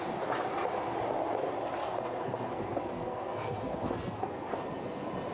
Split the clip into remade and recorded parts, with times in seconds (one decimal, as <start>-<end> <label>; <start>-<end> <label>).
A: 0.0-1.8 recorded; 1.8-4.5 remade; 4.5-5.3 recorded